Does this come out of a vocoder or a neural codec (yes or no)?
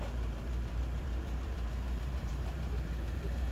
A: yes